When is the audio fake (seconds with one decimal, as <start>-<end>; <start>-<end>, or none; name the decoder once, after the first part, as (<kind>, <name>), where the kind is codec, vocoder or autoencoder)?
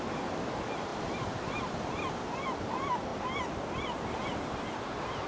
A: 0.0-5.3 (vocoder, BigVGAN v2)